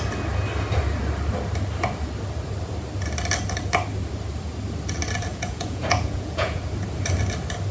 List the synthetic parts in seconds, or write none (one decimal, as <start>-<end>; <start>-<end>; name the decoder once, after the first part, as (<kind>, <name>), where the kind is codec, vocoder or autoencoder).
5.3-6.6 (vocoder, Vocos)